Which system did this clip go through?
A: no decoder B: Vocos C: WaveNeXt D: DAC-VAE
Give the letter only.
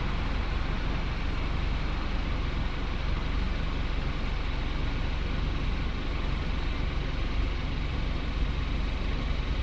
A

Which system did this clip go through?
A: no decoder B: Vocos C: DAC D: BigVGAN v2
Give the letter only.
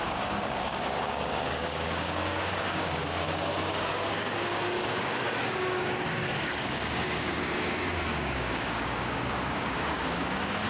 C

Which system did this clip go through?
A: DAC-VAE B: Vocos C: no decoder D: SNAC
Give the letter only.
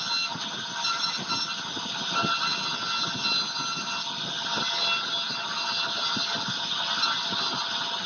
C